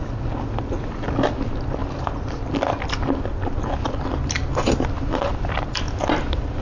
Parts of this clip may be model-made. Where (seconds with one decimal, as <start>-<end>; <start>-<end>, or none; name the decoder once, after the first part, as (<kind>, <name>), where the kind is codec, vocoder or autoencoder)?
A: none